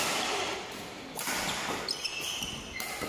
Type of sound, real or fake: real